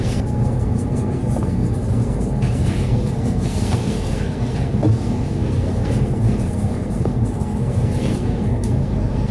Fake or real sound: fake